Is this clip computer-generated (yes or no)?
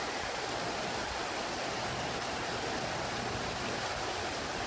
no